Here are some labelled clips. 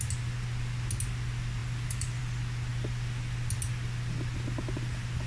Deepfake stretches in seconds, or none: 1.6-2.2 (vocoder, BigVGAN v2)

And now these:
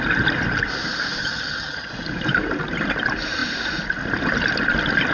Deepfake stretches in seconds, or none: 1.2-1.9 (vocoder, HiFi-GAN)

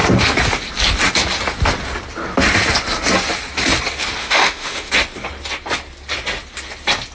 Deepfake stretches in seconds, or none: 4.2-4.9 (autoencoder, DAC-VAE)

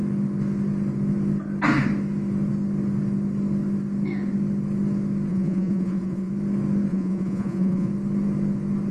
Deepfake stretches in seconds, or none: 5.3-6.3 (vocoder, Vocos); 6.9-7.9

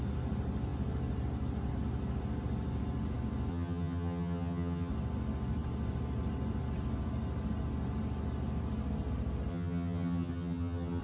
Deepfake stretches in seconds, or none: 3.5-4.9 (vocoder, HiFi-GAN); 9.5-11.0

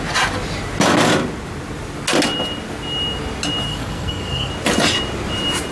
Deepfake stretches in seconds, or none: 3.7-4.5 (codec, SNAC)

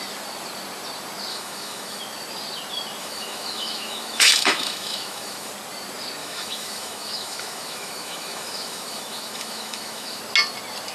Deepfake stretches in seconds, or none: 1.3-2.0 (autoencoder, DAC-VAE); 3.0-5.5; 6.2-10.2

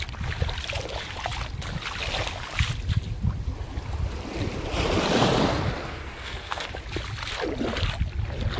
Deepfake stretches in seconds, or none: 5.8-6.7 (codec, SNAC)